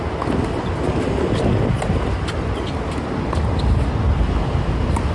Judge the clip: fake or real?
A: real